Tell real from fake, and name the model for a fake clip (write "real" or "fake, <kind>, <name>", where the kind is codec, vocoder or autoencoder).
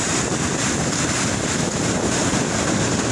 real